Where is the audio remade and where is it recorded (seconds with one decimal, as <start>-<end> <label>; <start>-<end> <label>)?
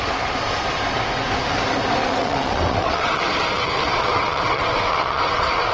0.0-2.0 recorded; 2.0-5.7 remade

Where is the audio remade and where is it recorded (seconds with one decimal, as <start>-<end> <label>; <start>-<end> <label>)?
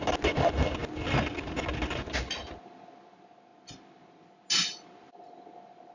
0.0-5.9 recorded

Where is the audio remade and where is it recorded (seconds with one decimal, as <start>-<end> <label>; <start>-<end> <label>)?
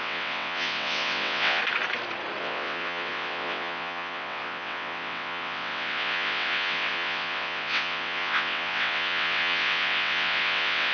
0.0-1.6 remade; 1.6-2.4 recorded; 2.4-10.9 remade